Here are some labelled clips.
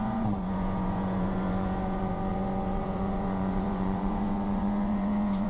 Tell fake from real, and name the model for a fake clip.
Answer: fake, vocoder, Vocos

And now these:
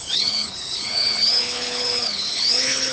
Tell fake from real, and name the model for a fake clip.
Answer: fake, codec, HILCodec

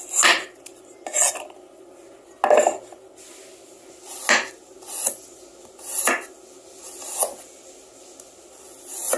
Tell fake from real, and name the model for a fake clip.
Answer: real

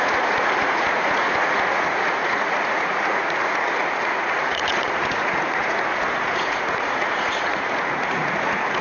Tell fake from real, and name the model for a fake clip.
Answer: fake, vocoder, Vocos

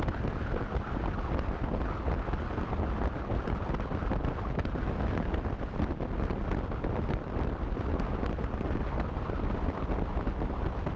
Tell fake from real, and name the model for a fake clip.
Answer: real